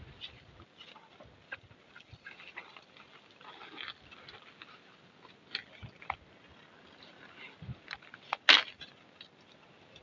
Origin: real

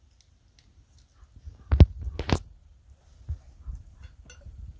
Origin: real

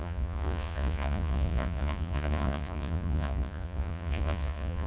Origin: fake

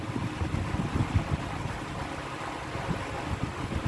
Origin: real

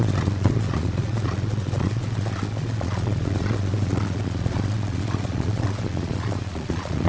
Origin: fake